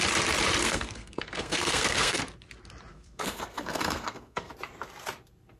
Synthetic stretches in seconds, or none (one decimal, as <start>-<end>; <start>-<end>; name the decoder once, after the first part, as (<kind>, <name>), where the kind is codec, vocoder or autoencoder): 0.6-2.2 (codec, SNAC); 2.9-4.5

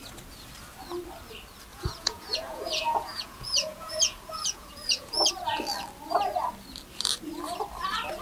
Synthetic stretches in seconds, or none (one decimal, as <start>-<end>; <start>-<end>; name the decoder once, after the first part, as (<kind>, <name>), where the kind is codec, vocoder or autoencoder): 1.7-5.3 (vocoder, Vocos)

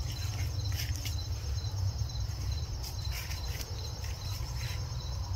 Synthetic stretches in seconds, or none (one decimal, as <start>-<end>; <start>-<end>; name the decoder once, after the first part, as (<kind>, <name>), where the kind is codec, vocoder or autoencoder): 1.2-4.4 (vocoder, BigVGAN v2)

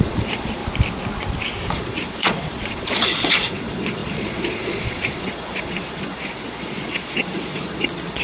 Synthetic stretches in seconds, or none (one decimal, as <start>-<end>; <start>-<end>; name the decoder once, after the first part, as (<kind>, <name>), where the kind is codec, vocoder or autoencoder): 0.0-0.6 (vocoder, Vocos); 1.7-8.2

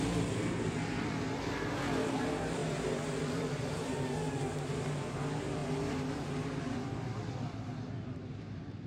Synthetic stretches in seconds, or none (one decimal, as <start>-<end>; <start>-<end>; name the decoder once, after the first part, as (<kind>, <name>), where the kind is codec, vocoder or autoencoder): 2.6-3.8 (vocoder, BigVGAN v2); 5.6-8.4

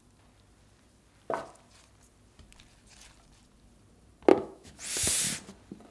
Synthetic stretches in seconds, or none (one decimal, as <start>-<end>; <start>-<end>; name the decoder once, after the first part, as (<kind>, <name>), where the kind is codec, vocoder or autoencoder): 4.3-4.8 (autoencoder, DAC-VAE)

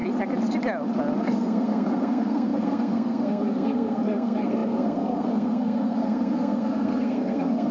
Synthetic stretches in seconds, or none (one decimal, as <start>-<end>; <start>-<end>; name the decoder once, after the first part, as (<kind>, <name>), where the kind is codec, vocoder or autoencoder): 1.2-7.7 (codec, SNAC)

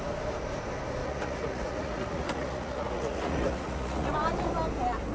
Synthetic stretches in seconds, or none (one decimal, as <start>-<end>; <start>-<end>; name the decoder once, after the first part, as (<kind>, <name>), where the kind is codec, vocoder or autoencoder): 1.0-4.1 (vocoder, Vocos)